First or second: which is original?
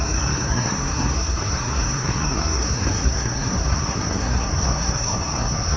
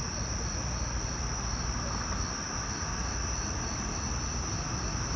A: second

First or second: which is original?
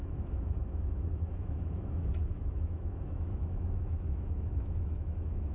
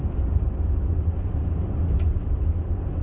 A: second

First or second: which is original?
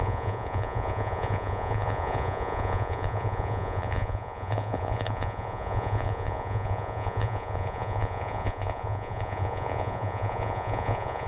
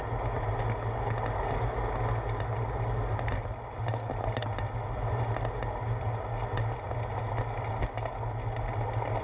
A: second